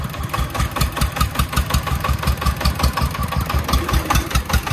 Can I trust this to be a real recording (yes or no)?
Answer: yes